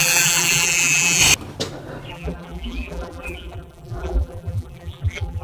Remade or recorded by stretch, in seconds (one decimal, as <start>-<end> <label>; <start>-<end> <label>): 0.0-1.2 remade; 1.2-2.1 recorded; 2.1-5.4 remade